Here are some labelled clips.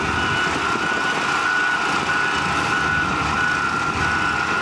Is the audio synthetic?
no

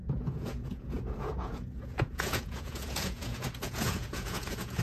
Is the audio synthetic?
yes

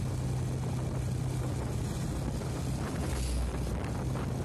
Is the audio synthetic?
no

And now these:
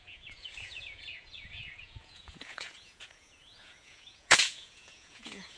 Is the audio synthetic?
yes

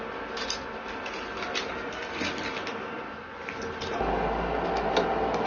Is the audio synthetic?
no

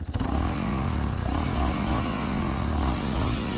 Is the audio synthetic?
yes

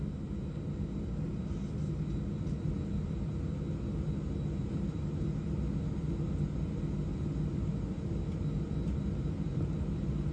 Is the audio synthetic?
no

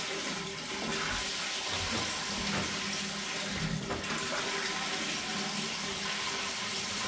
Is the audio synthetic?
no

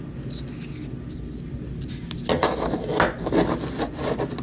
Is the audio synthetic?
no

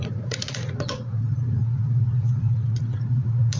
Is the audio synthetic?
yes